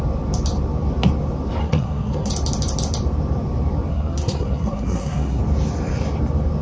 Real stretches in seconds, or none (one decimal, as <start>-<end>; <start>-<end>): 0.0-1.6; 2.3-3.9; 5.4-6.6